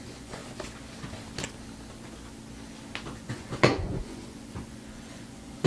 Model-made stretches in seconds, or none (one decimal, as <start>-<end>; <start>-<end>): 0.0-0.4; 3.2-5.7